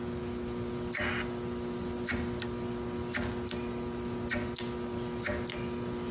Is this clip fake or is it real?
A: real